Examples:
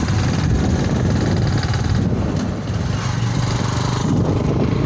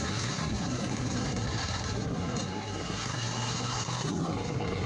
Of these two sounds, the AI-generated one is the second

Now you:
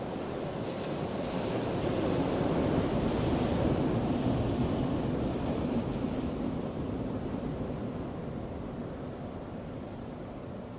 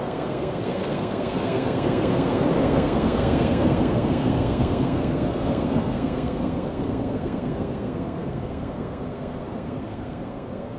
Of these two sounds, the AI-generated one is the second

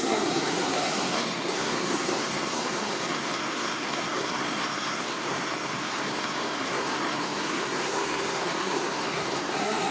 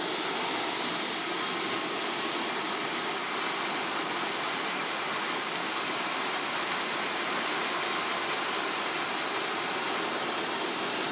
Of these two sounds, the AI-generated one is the first